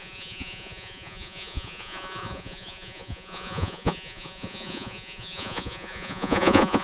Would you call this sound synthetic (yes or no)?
yes